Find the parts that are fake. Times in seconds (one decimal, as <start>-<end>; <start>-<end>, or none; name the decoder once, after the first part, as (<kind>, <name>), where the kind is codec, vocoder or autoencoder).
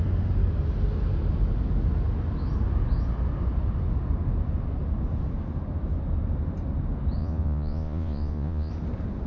7.2-8.7 (vocoder, Vocos)